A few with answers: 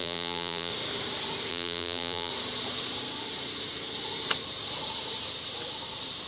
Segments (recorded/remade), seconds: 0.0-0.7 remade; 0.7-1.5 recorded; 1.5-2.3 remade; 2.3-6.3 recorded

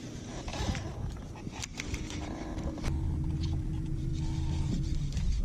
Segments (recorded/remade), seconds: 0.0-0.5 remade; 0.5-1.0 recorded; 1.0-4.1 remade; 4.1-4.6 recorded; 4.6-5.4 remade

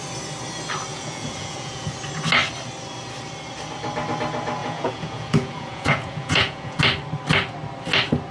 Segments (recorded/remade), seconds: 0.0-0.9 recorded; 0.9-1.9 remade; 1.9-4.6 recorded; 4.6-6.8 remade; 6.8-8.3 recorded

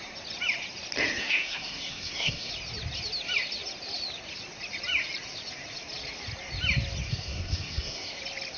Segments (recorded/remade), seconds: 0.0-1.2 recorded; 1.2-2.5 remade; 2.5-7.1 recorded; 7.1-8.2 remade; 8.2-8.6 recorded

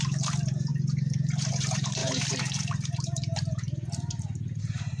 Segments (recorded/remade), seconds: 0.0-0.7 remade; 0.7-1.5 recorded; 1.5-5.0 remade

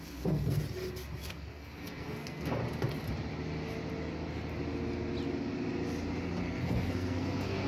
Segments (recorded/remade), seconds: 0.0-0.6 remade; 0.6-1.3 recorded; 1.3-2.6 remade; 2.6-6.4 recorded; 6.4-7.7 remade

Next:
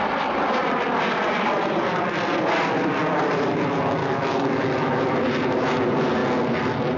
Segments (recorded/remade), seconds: 0.0-4.0 recorded; 4.0-5.0 remade; 5.0-7.0 recorded